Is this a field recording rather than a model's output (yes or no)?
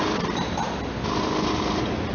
yes